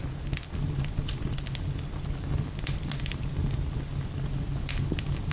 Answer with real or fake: real